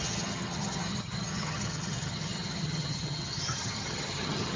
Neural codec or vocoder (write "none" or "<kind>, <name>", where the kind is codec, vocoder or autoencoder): vocoder, HiFi-GAN